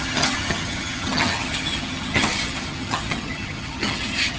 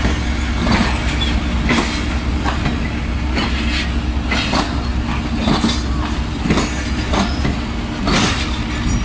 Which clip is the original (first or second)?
second